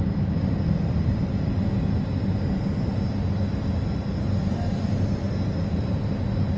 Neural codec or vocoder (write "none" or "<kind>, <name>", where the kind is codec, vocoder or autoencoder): none